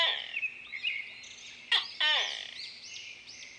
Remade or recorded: recorded